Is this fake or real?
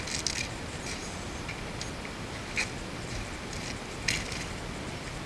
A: real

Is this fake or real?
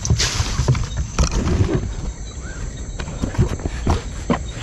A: fake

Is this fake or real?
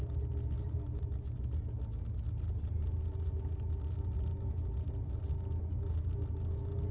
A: real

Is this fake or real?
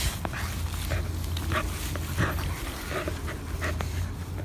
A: real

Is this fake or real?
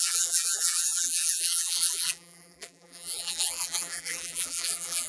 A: fake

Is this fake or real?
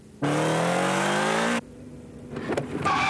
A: real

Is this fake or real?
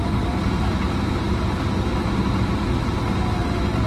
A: real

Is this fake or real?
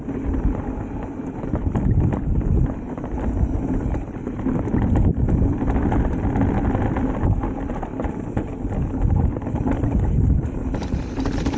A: real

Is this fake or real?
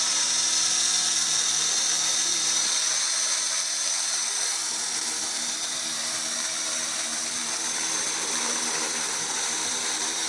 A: fake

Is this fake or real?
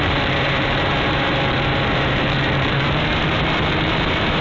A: fake